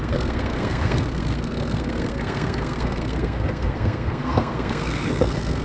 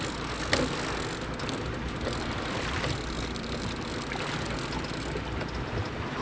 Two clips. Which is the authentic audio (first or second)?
second